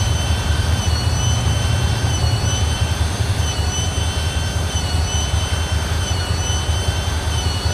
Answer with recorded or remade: remade